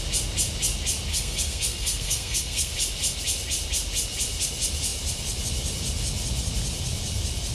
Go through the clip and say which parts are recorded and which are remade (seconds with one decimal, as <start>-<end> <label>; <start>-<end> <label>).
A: 0.0-1.1 recorded; 1.1-2.7 remade; 2.7-7.5 recorded